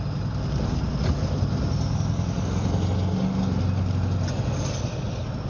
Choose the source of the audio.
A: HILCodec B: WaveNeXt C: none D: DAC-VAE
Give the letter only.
C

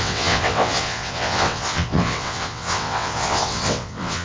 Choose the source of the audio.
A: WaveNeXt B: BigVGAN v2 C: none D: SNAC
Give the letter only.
A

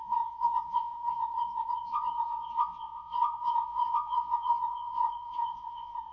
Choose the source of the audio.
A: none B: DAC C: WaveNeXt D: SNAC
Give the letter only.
C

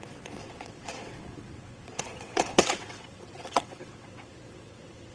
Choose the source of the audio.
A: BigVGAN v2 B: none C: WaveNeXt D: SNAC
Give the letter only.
C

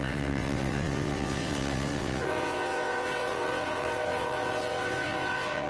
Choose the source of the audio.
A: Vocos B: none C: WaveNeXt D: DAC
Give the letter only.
C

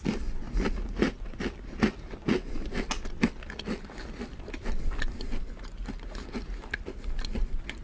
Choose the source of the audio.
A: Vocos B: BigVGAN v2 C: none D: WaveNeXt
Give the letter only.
C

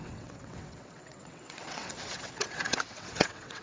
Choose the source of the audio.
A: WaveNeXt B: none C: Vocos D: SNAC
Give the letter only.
A